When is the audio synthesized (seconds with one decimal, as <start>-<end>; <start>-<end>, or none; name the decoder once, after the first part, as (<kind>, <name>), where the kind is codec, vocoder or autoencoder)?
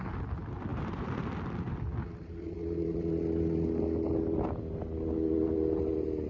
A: 0.7-1.2 (vocoder, BigVGAN v2)